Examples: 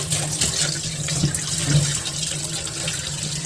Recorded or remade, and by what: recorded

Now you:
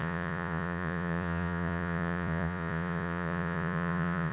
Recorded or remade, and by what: remade, vocoder, Vocos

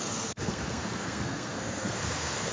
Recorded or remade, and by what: remade, codec, SNAC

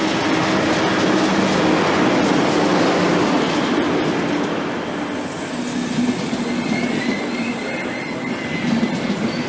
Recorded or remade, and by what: recorded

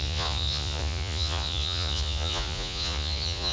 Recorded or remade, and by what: remade, vocoder, Vocos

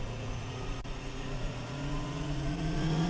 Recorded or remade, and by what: remade, vocoder, Vocos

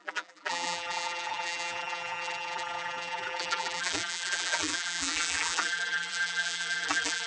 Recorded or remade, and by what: remade, vocoder, BigVGAN v2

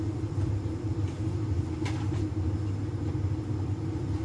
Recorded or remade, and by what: recorded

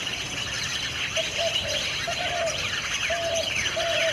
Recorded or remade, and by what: recorded